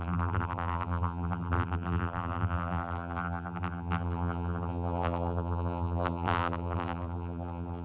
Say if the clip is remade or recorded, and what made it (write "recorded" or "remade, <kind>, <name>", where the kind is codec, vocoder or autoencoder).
remade, vocoder, BigVGAN v2